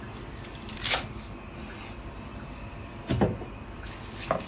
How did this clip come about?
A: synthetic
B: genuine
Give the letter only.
B